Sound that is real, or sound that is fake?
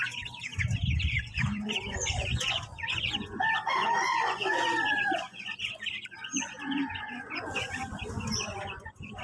fake